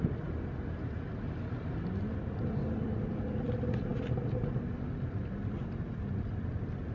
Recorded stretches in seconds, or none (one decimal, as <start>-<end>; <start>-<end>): 0.0-6.9